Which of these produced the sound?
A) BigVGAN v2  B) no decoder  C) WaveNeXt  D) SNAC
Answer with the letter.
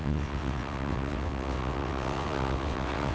C